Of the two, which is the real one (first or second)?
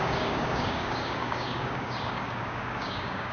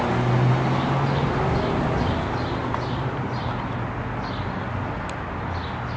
second